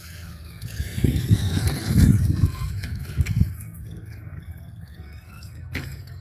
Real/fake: fake